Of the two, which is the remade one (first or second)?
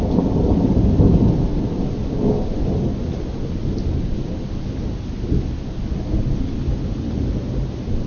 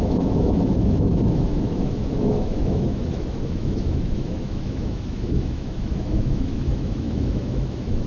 second